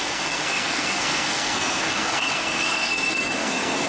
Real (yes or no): no